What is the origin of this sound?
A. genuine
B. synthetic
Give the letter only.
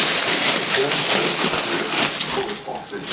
A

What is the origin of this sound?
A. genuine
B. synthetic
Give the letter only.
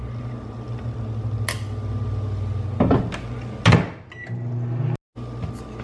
A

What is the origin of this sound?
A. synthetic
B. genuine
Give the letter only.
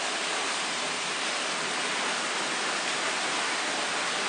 B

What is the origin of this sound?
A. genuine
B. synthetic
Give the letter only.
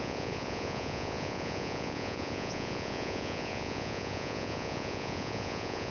B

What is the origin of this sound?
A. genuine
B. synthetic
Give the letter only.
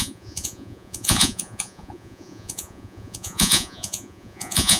B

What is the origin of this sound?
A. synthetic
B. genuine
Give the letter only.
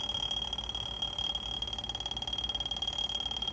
B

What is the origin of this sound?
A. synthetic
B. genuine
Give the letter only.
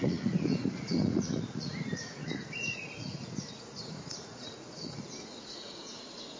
A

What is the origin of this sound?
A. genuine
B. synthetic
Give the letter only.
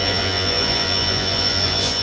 B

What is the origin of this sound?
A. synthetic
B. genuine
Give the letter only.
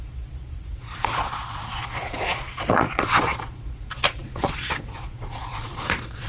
A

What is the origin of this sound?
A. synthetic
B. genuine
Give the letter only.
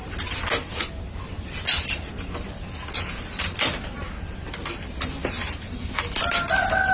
B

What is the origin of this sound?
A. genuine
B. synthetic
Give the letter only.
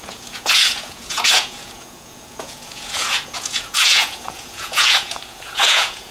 B